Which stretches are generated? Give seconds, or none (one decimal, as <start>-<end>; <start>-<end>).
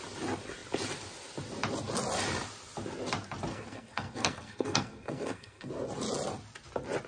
3.5-5.7